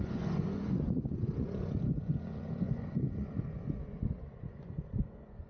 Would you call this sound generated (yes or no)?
yes